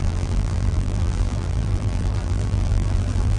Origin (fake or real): fake